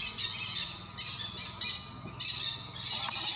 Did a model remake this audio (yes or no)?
no